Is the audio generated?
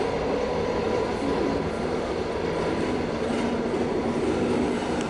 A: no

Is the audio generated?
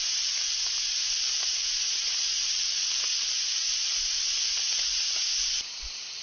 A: no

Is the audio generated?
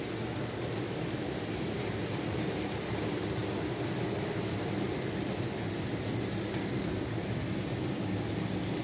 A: no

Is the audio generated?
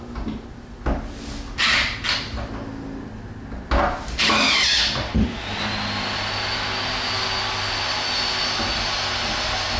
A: no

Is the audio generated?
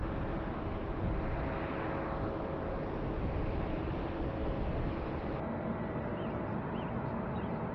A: no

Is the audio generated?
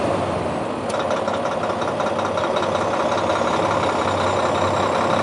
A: no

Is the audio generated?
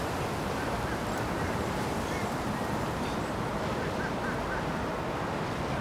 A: no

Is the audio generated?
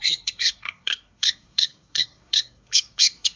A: yes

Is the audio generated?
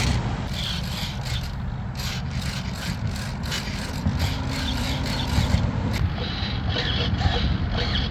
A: no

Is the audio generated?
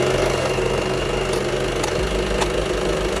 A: no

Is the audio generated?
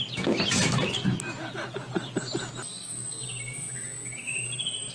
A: no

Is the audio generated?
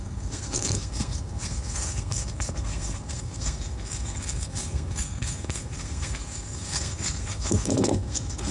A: yes